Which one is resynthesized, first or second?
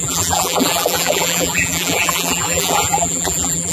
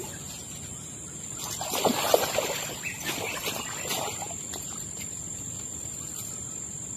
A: first